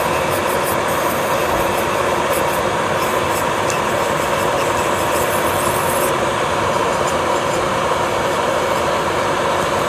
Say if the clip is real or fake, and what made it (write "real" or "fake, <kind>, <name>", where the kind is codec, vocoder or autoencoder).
real